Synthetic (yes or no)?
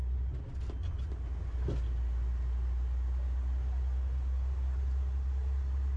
no